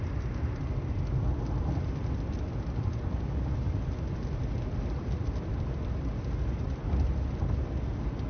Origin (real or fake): real